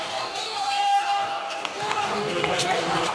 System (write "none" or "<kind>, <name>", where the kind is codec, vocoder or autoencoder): codec, DAC